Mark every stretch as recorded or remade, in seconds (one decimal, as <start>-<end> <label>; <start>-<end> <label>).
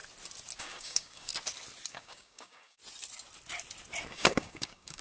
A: 0.0-0.6 recorded; 0.6-1.3 remade; 1.3-1.9 recorded; 1.9-2.8 remade; 2.8-4.1 recorded; 4.1-5.0 remade